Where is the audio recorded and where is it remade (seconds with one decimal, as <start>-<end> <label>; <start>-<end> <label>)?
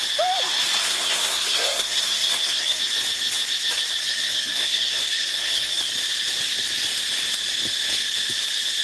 0.0-0.8 recorded; 0.8-2.8 remade; 2.8-4.0 recorded; 4.0-5.9 remade; 5.9-8.8 recorded